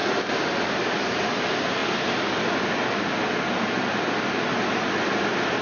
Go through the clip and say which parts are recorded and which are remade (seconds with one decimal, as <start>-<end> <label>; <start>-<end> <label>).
0.0-5.6 recorded